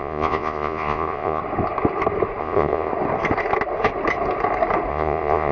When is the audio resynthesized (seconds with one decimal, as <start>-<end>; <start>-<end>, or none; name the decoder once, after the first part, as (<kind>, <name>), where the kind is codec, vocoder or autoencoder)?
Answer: 0.0-1.4 (vocoder, Vocos); 2.4-2.9; 4.9-5.5